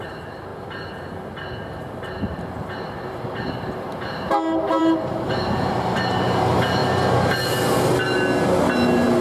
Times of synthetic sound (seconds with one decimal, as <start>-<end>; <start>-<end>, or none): 0.0-6.8